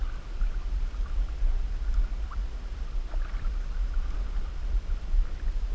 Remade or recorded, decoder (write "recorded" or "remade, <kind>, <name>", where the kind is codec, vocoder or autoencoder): recorded